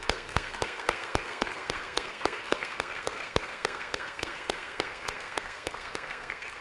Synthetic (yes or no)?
yes